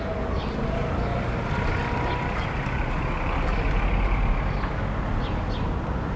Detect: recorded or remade recorded